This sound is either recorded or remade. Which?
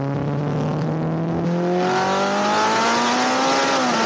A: recorded